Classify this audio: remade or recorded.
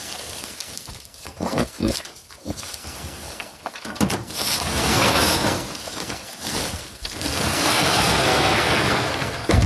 remade